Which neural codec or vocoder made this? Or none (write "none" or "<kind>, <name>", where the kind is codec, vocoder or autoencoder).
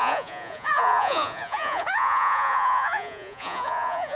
vocoder, Vocos